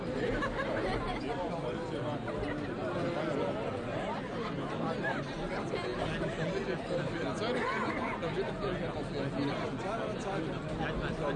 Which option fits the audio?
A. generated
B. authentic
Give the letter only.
B